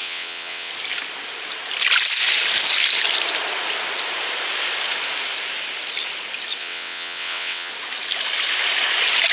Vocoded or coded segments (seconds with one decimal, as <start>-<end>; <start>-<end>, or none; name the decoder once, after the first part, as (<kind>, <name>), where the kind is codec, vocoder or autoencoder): 0.0-0.7 (vocoder, WaveNeXt); 6.6-7.7